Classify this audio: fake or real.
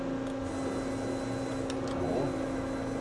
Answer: real